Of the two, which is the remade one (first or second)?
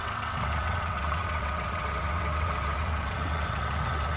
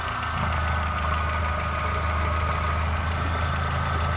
first